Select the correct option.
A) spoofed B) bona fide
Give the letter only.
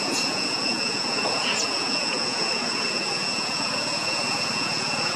A